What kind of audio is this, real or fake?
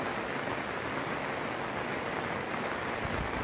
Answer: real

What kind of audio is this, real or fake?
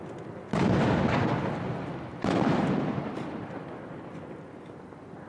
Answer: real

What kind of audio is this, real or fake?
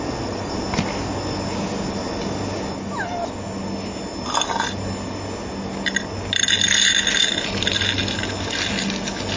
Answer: real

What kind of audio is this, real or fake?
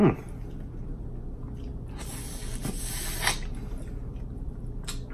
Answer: real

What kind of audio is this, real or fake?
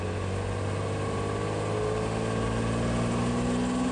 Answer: real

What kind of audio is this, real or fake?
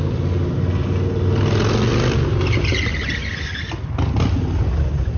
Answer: real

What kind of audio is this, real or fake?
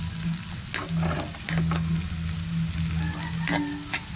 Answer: real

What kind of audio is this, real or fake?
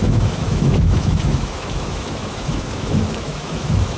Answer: fake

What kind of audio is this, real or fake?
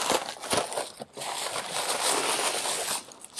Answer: real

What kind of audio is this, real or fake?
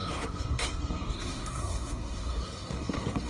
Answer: fake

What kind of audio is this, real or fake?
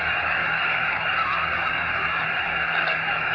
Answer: fake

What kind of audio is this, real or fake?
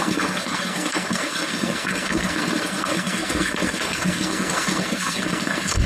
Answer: fake